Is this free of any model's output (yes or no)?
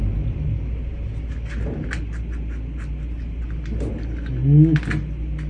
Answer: yes